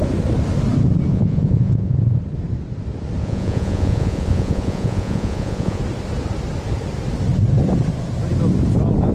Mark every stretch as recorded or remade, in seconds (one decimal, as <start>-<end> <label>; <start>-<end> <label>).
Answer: 0.0-1.1 recorded; 1.1-2.2 remade; 2.2-3.2 recorded; 3.2-5.8 remade; 5.8-9.1 recorded

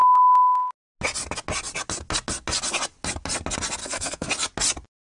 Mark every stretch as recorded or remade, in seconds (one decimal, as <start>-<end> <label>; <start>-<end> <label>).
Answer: 0.0-3.8 recorded; 3.8-4.3 remade; 4.3-5.1 recorded

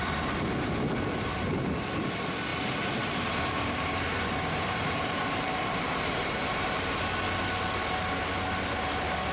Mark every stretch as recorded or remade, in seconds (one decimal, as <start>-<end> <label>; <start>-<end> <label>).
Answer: 0.0-2.5 recorded; 2.5-7.0 remade; 7.0-9.3 recorded

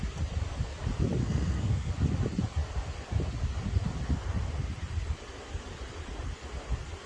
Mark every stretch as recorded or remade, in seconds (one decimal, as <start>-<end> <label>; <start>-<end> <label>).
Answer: 0.0-1.2 recorded; 1.2-1.9 remade; 1.9-7.1 recorded

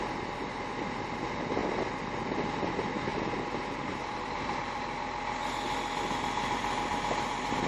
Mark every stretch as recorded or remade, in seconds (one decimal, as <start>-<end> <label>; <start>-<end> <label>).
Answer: 0.0-7.7 recorded

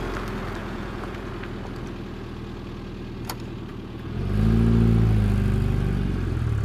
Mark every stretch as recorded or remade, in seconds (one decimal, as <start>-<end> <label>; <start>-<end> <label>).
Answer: 0.0-0.6 recorded; 0.6-1.3 remade; 1.3-3.7 recorded; 3.7-4.2 remade; 4.2-6.6 recorded